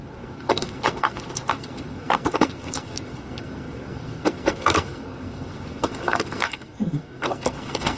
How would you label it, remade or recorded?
remade